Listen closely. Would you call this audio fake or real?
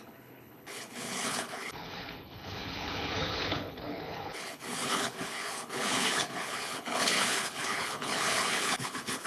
fake